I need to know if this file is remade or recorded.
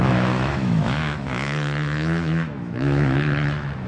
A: remade